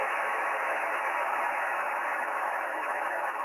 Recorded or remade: remade